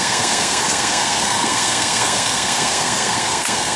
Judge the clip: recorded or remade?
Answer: remade